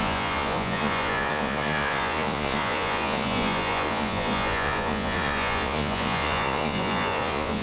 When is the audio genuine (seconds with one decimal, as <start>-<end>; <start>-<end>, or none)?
none